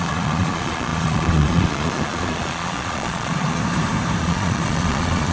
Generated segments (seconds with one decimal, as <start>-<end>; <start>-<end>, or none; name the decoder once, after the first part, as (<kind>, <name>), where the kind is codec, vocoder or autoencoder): 0.0-3.6 (vocoder, Vocos); 4.2-5.3